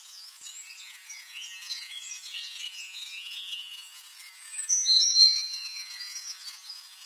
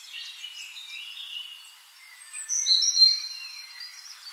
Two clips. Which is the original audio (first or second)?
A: second